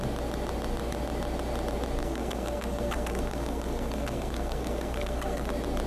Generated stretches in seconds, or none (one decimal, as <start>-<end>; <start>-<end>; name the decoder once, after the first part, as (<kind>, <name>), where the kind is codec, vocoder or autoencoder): 2.0-5.5 (codec, SNAC)